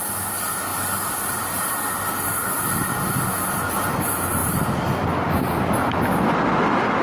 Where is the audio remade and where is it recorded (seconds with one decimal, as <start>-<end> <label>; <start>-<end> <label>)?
0.0-4.4 recorded; 4.4-5.3 remade; 5.3-7.0 recorded